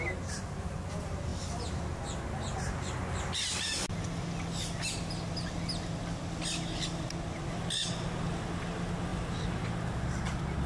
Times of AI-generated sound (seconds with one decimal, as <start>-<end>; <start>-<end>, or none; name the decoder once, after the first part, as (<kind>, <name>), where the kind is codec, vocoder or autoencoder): 9.1-9.7 (vocoder, BigVGAN v2)